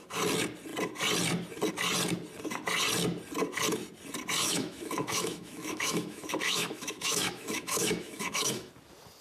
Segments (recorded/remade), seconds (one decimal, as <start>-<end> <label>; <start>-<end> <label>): 0.0-4.4 recorded; 4.4-8.7 remade; 8.7-9.2 recorded